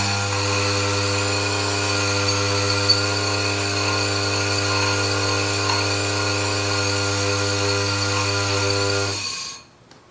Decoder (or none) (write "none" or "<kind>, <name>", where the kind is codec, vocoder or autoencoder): none